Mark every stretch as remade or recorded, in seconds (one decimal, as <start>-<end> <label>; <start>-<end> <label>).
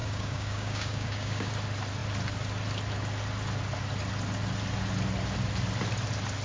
0.0-1.5 remade; 1.5-6.4 recorded